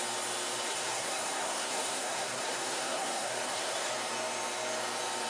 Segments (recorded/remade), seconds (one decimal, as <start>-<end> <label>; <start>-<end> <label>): 0.0-0.7 recorded; 0.7-3.9 remade; 3.9-5.3 recorded